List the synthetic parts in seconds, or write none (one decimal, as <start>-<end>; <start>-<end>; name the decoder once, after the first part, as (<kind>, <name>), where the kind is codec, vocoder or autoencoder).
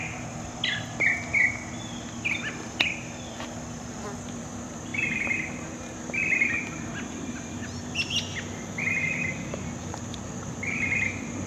none